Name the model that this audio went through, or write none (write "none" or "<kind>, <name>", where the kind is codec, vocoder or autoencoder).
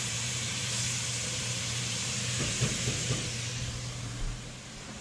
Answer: vocoder, BigVGAN v2